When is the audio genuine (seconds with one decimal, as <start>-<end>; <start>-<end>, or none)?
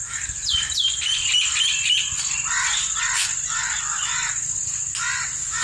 0.0-5.6